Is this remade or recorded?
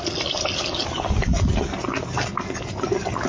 recorded